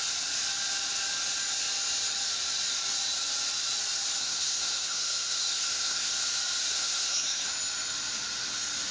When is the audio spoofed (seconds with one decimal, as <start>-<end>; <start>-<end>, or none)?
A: 4.2-6.1; 6.7-7.5